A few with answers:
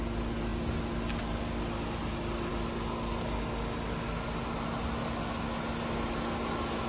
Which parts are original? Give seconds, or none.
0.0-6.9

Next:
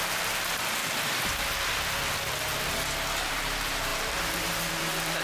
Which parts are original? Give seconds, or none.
0.8-3.3

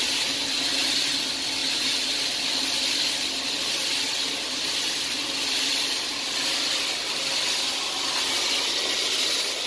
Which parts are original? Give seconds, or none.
0.0-1.6; 2.1-9.7

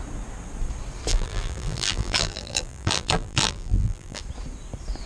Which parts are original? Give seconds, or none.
0.0-1.1; 4.2-5.1

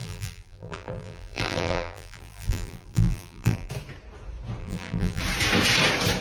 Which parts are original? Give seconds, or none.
3.7-4.6; 5.2-6.2

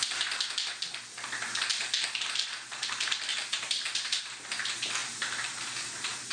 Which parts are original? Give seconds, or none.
0.0-3.3; 4.2-5.0

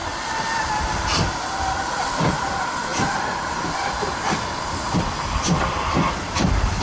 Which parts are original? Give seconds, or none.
2.5-2.9